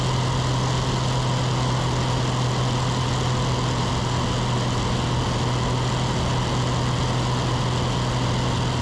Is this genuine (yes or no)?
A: yes